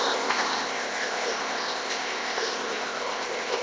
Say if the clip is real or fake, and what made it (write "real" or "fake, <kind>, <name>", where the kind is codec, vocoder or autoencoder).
fake, codec, ZipCodec